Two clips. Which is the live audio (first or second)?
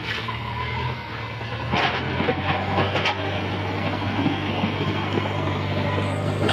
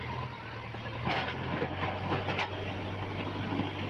second